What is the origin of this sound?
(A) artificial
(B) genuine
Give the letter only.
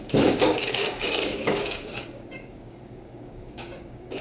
A